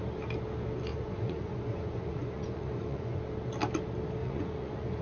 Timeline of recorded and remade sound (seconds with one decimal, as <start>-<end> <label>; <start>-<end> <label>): 0.0-0.9 recorded; 0.9-3.2 remade; 3.2-4.2 recorded; 4.2-5.0 remade